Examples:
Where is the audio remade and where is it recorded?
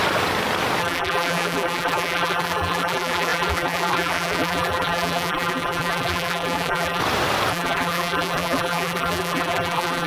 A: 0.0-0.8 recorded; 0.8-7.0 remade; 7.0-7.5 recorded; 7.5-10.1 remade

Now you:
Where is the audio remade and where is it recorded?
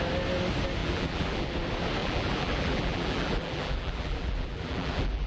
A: 0.0-0.8 recorded; 0.8-1.5 remade; 1.5-2.0 recorded; 2.0-5.3 remade